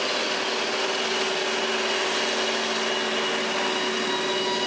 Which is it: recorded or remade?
recorded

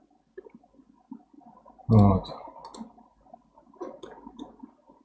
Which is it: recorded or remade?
recorded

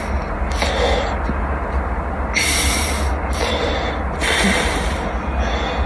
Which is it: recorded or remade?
recorded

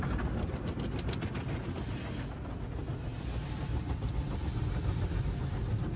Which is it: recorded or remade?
recorded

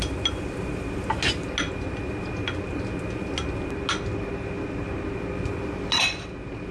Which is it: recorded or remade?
recorded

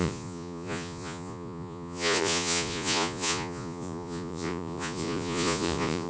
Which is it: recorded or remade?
remade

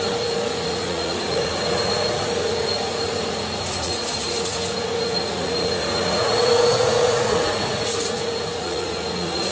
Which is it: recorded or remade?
remade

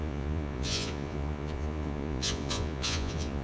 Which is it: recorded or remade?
remade